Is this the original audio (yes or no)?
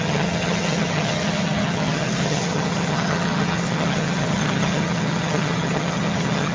no